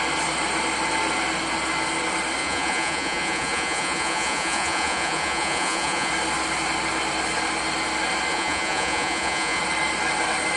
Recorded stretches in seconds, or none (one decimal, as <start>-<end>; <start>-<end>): 0.0-2.4; 6.1-8.3; 9.6-10.6